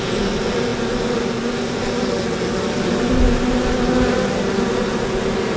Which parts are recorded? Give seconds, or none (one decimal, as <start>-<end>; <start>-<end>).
0.0-5.6